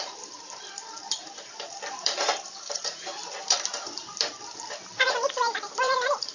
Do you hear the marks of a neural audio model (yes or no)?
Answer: yes